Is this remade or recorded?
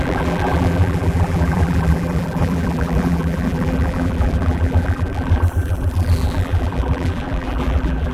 remade